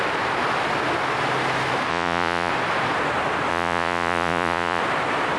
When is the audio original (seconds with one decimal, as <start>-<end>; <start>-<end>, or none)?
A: 0.0-1.9; 2.5-3.5; 4.8-5.4